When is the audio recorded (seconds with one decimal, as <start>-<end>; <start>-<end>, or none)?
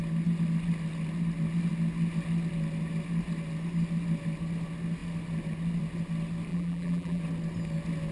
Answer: 0.0-6.5; 7.2-8.1